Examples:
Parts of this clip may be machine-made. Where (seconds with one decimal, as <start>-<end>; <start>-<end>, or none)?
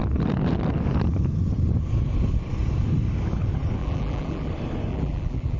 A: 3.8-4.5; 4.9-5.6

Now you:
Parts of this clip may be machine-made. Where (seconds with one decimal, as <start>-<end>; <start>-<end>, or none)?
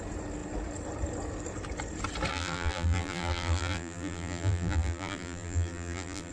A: 2.3-6.3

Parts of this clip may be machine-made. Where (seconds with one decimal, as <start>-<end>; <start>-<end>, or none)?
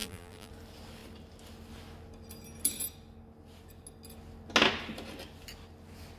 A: 0.0-0.5